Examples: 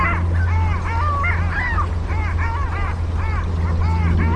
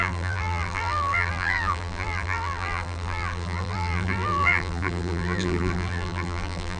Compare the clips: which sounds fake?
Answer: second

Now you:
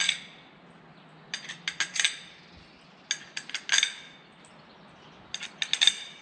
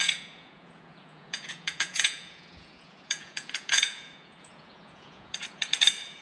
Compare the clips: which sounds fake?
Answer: second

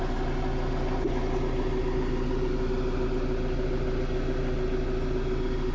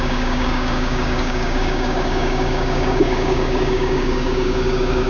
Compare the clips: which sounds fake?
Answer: second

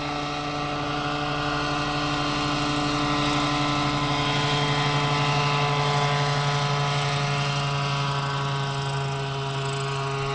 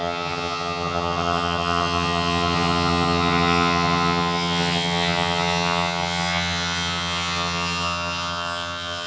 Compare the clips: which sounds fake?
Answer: second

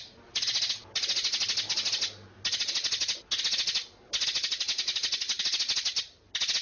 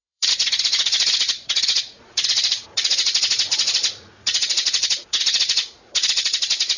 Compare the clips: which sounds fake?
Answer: second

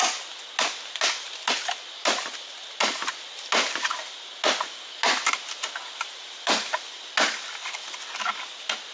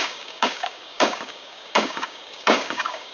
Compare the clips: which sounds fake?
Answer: second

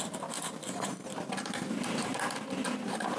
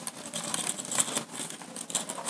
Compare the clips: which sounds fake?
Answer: first